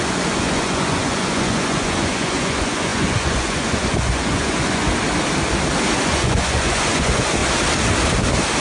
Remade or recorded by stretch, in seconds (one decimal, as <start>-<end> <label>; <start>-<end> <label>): 0.0-4.9 remade; 4.9-6.0 recorded; 6.0-7.4 remade; 7.4-8.6 recorded